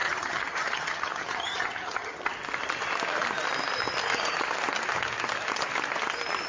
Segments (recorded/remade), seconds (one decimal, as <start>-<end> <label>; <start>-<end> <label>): 0.0-2.3 remade; 2.3-6.5 recorded